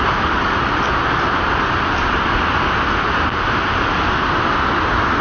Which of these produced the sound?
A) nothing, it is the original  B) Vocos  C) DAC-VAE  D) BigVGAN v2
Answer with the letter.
A